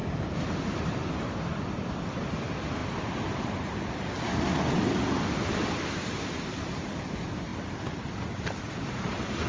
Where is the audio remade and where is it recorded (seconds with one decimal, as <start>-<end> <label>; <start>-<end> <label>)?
0.0-2.2 remade; 2.2-7.5 recorded; 7.5-9.0 remade; 9.0-9.5 recorded